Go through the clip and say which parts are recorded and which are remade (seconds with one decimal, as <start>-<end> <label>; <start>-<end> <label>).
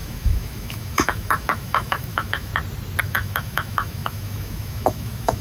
0.0-2.5 remade; 2.5-3.0 recorded; 3.0-5.4 remade